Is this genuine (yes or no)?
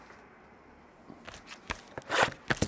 yes